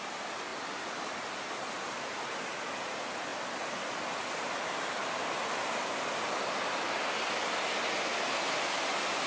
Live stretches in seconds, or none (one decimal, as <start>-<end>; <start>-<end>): 0.0-9.3